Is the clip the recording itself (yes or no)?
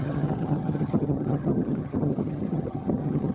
no